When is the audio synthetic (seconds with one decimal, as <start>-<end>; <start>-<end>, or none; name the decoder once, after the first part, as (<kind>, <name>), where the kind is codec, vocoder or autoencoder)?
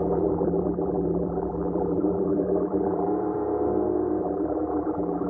0.0-3.1 (vocoder, BigVGAN v2); 4.2-5.3